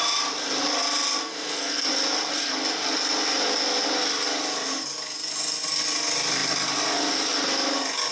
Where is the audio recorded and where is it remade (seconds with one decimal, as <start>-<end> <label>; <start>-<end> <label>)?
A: 0.0-1.2 recorded; 1.2-1.9 remade; 1.9-8.1 recorded